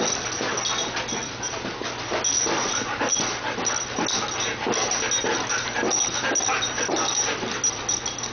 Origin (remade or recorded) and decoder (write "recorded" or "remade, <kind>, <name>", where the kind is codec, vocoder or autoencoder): recorded